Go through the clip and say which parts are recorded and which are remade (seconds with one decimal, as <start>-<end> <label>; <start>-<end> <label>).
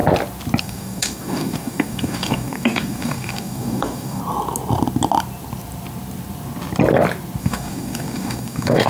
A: 0.0-0.6 recorded; 0.6-4.2 remade; 4.2-7.4 recorded; 7.4-8.9 remade